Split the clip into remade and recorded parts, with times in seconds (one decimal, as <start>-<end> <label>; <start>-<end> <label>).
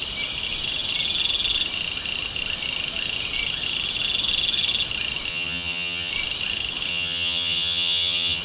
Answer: 0.0-5.3 recorded; 5.3-6.1 remade; 6.1-6.9 recorded; 6.9-8.4 remade